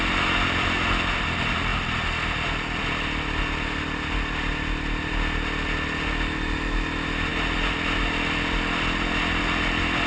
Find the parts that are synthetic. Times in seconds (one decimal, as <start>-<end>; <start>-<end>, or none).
none